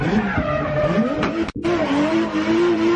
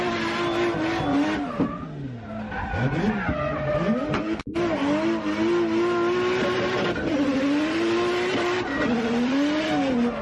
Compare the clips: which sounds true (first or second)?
second